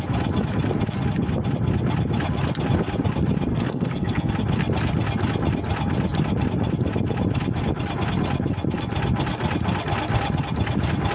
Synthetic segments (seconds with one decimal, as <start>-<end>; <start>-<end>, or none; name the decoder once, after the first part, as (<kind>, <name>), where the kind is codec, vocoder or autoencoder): 3.5-4.3 (codec, SNAC)